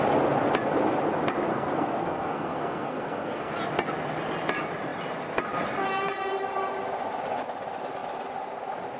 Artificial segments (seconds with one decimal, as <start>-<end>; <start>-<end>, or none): 1.5-3.5